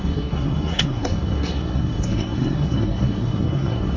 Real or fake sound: fake